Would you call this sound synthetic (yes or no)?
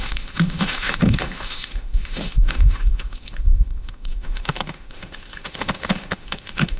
yes